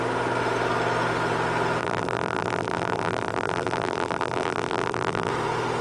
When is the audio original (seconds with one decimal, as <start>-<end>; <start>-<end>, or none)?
0.0-1.8; 5.3-5.8